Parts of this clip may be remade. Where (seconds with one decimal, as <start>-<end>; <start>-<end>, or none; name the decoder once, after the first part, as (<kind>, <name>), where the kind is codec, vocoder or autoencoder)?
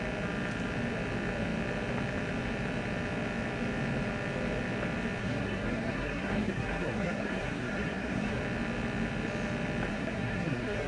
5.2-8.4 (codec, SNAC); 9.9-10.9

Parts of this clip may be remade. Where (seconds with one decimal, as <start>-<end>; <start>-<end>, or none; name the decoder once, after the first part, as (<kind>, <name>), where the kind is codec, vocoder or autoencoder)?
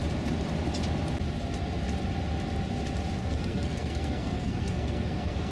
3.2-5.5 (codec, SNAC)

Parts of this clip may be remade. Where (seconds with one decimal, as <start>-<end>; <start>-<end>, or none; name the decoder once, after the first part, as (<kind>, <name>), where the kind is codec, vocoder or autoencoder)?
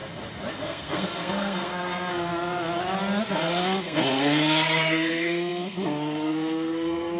0.5-2.3 (codec, SNAC); 3.3-7.2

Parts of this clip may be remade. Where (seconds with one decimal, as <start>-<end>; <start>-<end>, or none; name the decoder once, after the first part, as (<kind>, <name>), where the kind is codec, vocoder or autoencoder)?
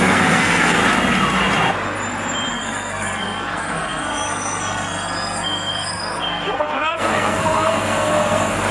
0.0-0.8 (codec, SNAC); 2.5-8.7